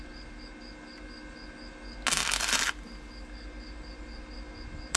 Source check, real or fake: real